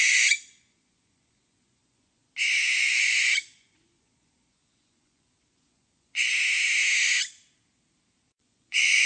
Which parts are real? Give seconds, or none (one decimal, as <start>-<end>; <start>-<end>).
2.2-2.8; 6.3-8.3